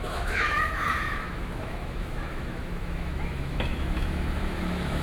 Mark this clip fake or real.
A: fake